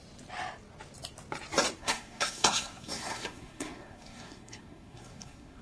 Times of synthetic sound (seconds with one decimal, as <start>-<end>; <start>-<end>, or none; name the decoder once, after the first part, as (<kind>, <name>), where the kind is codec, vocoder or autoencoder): 1.8-5.6 (codec, SNAC)